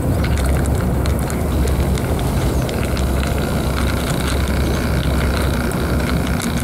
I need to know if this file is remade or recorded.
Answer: recorded